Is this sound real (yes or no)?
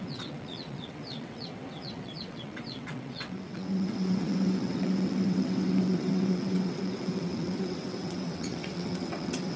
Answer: no